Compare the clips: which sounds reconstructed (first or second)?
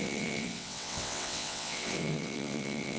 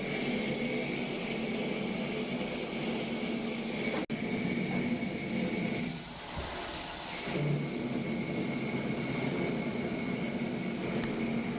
first